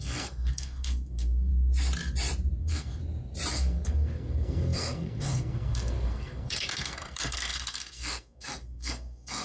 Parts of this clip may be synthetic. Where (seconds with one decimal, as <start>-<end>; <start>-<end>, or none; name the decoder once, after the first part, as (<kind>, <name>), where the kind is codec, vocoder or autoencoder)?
0.0-1.5 (codec, SNAC); 2.6-3.0; 3.5-9.4